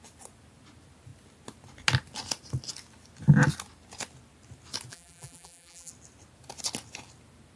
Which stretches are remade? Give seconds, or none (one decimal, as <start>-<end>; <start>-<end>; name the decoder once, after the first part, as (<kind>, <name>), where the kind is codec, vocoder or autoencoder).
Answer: 4.9-5.9 (vocoder, BigVGAN v2)